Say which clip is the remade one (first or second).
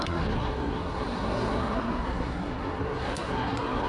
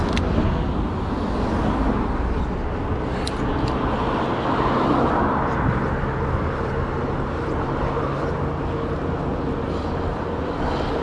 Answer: first